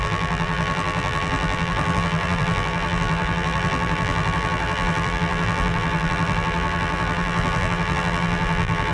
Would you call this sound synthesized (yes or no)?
yes